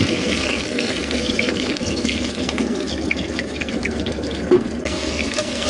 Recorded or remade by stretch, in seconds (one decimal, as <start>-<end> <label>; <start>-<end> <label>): 0.0-5.7 remade

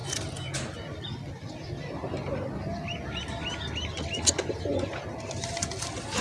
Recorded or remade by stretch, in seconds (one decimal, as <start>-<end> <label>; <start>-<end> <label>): 0.0-6.2 recorded

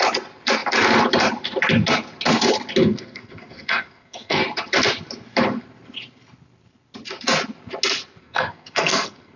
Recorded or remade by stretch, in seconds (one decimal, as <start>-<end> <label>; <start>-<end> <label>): 0.0-2.8 recorded; 2.8-4.4 remade; 4.4-8.2 recorded; 8.2-9.4 remade

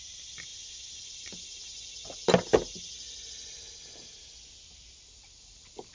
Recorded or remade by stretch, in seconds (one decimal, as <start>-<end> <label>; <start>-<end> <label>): 0.0-5.9 recorded

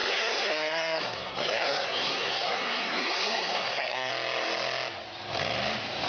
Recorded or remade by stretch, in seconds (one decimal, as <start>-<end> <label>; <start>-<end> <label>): 0.0-4.1 remade; 4.1-6.1 recorded

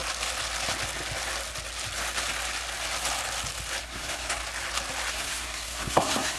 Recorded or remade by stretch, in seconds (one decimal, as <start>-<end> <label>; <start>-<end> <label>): 0.0-3.8 recorded; 3.8-4.4 remade; 4.4-5.1 recorded; 5.1-6.4 remade

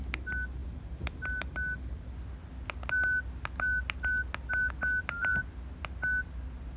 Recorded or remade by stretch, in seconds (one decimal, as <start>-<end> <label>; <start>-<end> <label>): 0.0-6.8 recorded